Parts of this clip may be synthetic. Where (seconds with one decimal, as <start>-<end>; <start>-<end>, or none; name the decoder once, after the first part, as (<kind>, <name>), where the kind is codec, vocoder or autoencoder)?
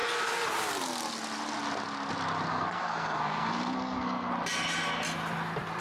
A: 2.5-4.3 (codec, SNAC)